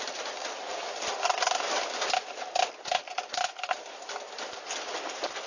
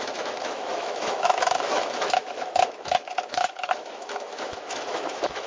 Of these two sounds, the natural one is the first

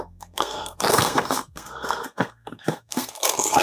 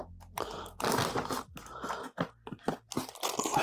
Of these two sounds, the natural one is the second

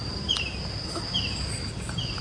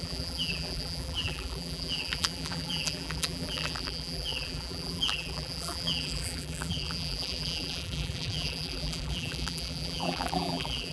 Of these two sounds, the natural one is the first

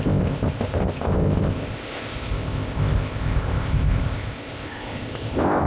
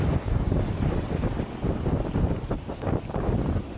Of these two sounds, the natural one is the second